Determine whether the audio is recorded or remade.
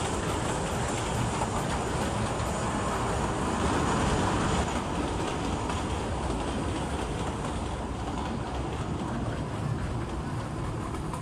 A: recorded